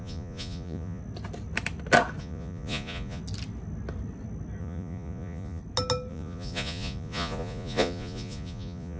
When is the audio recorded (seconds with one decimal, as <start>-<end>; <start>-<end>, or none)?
1.0-2.2; 3.2-4.6; 5.6-6.1